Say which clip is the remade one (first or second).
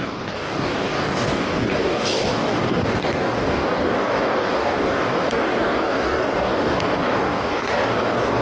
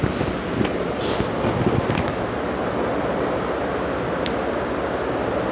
first